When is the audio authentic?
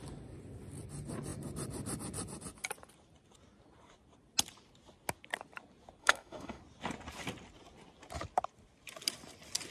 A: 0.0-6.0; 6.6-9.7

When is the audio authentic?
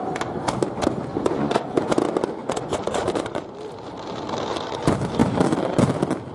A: 0.0-1.1; 1.9-2.4; 3.4-6.3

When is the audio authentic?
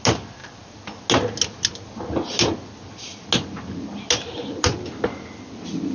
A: 0.0-5.9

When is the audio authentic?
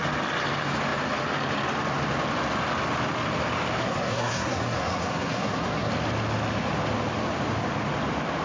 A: 0.0-3.8; 5.9-8.4